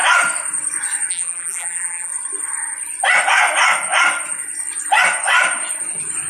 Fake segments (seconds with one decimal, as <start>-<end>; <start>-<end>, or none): 1.1-2.1